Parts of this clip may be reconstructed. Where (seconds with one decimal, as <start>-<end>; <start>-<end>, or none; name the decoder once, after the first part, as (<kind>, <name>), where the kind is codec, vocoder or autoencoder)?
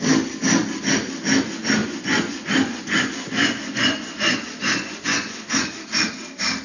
1.8-5.7 (vocoder, Vocos)